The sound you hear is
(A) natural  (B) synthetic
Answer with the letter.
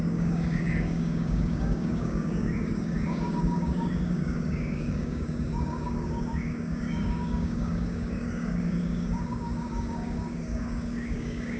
B